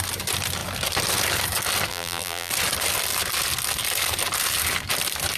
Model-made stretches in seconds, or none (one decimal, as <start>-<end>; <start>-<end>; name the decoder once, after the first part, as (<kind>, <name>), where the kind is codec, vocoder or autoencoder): 1.9-2.5 (vocoder, BigVGAN v2)